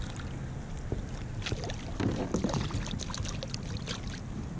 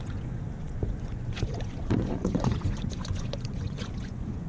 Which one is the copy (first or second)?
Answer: second